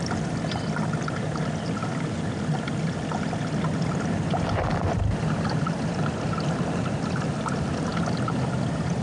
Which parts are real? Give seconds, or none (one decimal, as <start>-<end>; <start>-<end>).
0.0-9.0